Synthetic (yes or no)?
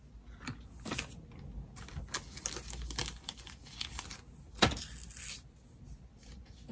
no